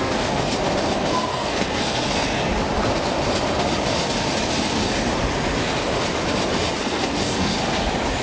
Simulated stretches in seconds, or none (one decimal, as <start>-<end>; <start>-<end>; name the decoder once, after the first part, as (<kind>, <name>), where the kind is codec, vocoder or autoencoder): 0.0-0.5 (codec, SNAC); 1.3-2.5; 6.8-7.5